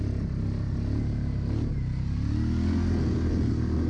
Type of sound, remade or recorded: recorded